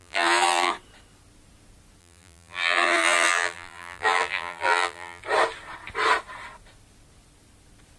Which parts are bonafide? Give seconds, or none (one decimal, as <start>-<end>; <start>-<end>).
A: 0.7-2.0; 5.2-8.0